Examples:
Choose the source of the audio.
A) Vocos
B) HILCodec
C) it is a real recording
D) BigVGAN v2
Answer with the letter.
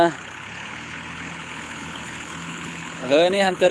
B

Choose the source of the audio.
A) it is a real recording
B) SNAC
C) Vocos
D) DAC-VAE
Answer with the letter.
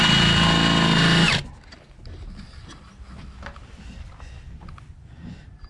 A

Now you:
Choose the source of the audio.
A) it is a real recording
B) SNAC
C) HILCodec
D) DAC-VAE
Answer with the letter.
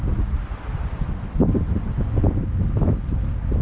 A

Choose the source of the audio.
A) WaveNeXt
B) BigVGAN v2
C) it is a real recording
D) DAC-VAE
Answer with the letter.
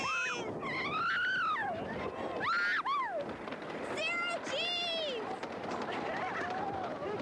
C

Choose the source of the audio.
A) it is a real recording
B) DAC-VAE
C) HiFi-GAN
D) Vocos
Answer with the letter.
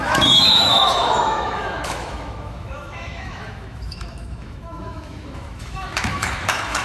B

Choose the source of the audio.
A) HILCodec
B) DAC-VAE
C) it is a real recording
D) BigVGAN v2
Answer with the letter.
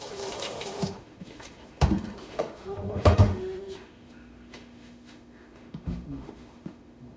B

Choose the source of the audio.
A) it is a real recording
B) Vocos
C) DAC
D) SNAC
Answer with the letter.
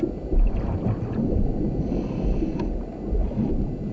A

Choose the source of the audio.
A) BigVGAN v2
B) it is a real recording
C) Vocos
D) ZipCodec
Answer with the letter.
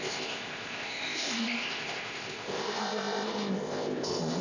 D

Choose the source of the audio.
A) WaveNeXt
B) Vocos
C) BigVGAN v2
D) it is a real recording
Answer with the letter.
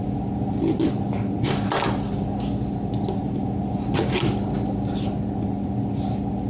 D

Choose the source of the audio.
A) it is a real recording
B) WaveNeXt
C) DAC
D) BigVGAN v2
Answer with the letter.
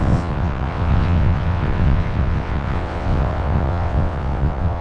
B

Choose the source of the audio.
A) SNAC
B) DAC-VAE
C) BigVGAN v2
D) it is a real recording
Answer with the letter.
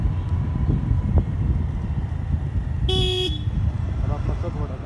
D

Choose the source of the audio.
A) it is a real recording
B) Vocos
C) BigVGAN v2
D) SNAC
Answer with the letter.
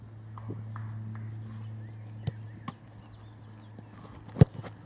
A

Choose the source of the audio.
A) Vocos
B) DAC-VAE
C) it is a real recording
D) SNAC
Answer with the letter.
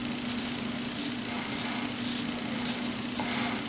C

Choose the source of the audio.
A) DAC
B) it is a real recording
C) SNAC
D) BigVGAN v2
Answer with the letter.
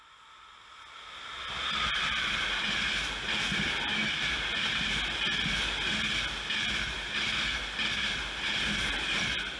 B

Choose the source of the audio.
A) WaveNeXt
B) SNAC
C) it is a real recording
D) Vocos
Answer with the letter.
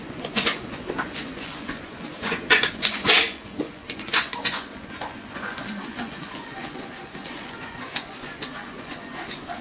D